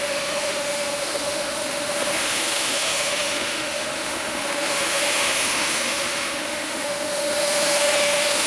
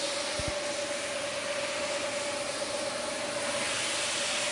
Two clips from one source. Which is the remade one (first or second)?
first